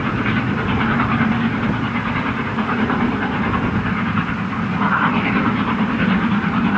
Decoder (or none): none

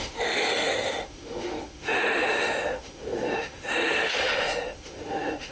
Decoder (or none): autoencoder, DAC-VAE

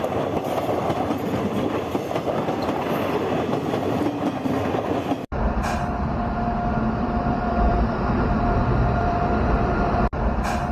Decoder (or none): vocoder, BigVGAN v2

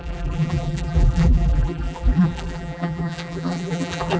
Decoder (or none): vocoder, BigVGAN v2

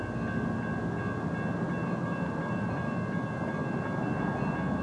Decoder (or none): none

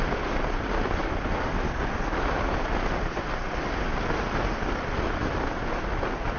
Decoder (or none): none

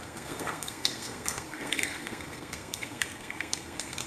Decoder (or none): codec, SNAC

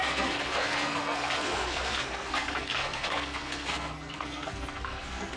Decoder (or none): codec, SNAC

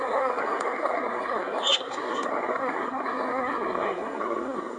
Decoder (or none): codec, SNAC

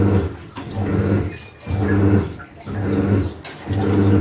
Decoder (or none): none